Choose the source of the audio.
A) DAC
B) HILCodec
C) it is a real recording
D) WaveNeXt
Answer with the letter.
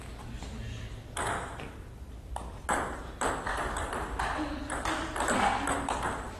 C